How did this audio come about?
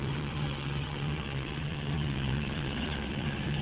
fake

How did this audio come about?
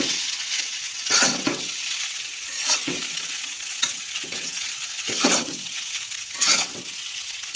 fake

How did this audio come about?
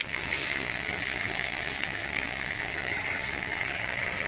fake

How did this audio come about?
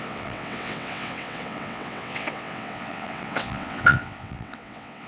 fake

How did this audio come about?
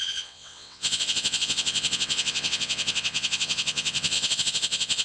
fake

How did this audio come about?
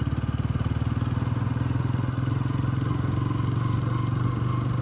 real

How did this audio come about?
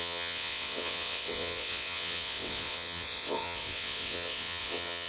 fake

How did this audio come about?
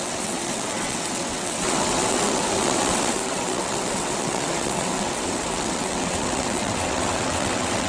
fake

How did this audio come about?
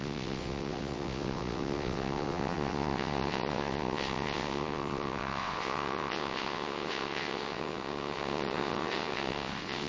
fake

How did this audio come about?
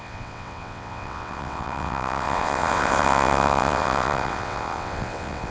fake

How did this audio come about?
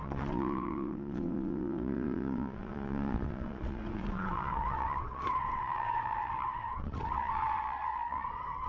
fake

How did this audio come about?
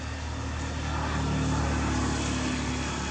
real